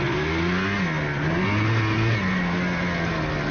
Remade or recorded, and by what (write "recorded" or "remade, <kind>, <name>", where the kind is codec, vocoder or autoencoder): recorded